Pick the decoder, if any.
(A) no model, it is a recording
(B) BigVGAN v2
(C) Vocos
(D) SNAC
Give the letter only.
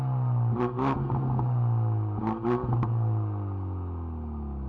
A